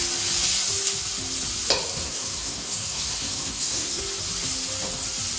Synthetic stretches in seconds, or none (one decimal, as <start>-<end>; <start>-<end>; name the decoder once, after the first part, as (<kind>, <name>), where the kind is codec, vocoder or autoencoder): 1.9-4.0 (codec, SNAC)